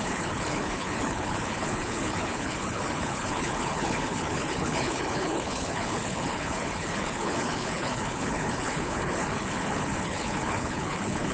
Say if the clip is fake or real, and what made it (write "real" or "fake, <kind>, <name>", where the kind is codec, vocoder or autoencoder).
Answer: fake, codec, HILCodec